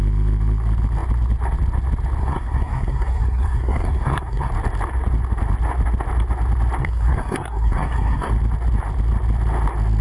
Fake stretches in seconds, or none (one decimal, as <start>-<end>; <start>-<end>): 2.2-4.5; 6.8-8.3